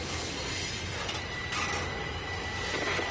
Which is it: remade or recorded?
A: recorded